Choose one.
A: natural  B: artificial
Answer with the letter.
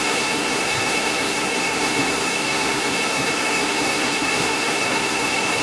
B